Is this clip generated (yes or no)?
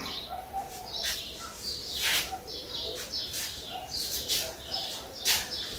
yes